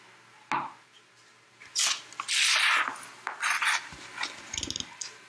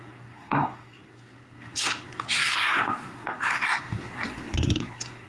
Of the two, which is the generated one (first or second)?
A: second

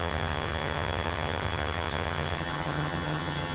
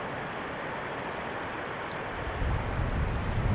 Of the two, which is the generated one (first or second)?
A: first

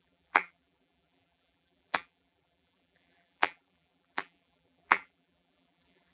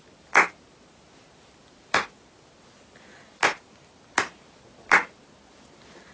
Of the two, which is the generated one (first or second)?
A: first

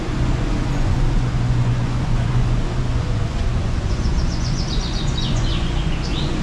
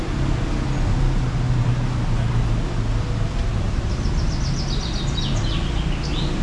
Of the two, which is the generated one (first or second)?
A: first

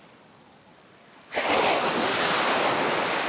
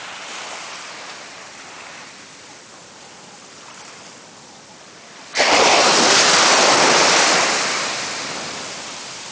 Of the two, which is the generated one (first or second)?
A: second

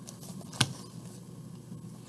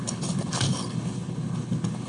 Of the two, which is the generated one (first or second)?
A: second